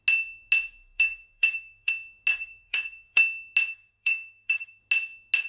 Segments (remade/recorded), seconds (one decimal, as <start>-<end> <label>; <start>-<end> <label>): 0.0-0.8 recorded; 0.8-1.9 remade; 1.9-2.3 recorded; 2.3-3.2 remade; 3.2-3.7 recorded; 3.7-4.8 remade; 4.8-5.5 recorded